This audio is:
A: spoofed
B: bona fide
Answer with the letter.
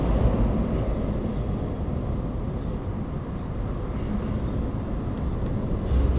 B